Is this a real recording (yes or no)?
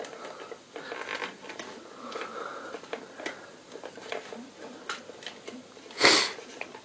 yes